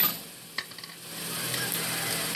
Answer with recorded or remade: recorded